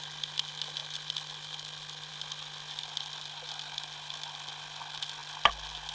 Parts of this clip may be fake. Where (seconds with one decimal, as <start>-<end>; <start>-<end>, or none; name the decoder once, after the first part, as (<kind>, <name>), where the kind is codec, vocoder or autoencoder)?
none